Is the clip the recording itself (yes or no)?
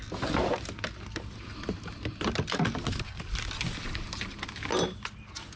yes